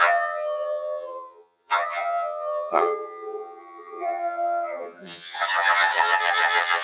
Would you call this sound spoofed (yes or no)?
yes